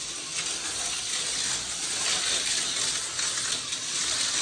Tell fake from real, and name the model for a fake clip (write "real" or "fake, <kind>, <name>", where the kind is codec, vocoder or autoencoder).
real